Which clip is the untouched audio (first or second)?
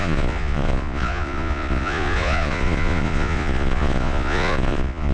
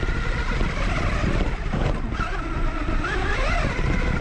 second